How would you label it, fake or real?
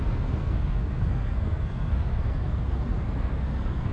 fake